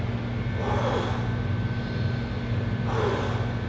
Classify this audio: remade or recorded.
recorded